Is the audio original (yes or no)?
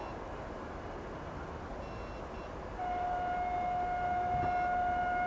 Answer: yes